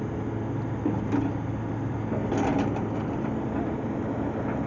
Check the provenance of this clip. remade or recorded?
recorded